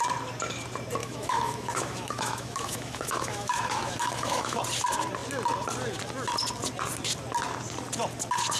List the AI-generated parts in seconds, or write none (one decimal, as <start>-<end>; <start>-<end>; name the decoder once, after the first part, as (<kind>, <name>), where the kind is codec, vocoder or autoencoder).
1.0-4.6 (autoencoder, DAC-VAE)